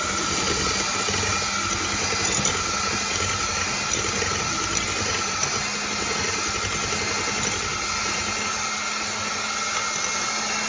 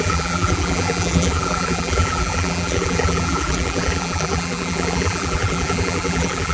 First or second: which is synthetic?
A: second